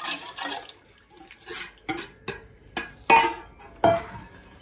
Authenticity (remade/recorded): recorded